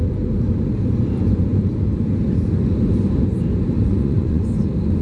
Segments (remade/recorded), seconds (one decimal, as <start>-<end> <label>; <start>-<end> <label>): 0.0-3.9 recorded; 3.9-4.4 remade; 4.4-5.0 recorded

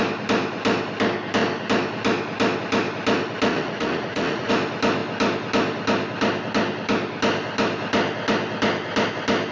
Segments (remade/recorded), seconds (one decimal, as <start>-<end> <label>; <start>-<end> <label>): 0.0-3.5 recorded; 3.5-4.5 remade; 4.5-9.5 recorded

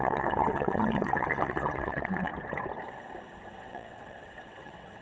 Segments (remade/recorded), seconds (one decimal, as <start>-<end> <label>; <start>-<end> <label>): 0.0-2.3 remade; 2.3-3.6 recorded; 3.6-5.0 remade

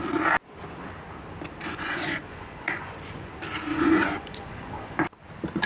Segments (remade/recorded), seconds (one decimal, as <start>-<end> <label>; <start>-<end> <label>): 0.0-1.7 recorded; 1.7-3.3 remade; 3.3-3.7 recorded; 3.7-5.0 remade; 5.0-5.7 recorded

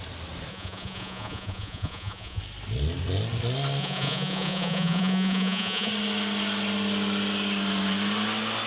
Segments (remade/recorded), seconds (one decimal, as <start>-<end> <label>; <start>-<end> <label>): 0.0-0.5 recorded; 0.5-2.4 remade; 2.4-3.8 recorded; 3.8-5.9 remade; 5.9-8.7 recorded